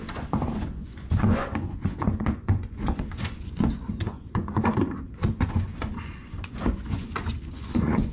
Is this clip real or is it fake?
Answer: fake